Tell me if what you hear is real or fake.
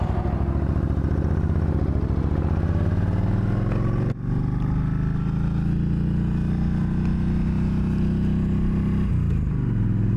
real